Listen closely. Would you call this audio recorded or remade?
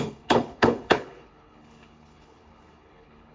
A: remade